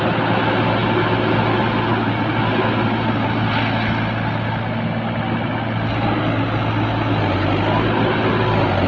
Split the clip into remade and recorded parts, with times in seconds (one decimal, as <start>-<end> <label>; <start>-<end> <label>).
0.0-8.9 recorded